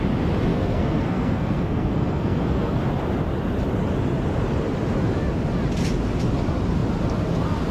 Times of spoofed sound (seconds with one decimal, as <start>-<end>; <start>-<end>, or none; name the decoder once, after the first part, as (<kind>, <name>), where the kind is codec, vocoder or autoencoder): 0.5-2.8 (codec, SNAC)